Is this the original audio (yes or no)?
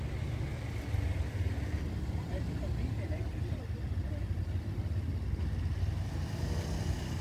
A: yes